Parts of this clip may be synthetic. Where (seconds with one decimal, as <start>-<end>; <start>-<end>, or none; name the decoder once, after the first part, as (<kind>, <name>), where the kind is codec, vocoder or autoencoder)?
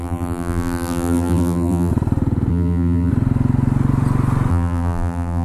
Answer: 0.0-1.9 (vocoder, BigVGAN v2); 2.5-3.1; 4.5-5.4